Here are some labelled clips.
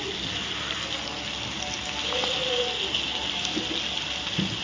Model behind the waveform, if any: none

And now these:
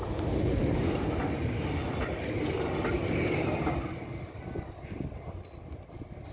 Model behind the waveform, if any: none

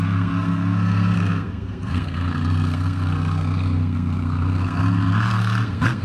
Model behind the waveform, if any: codec, SNAC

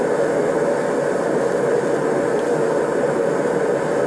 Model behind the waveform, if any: none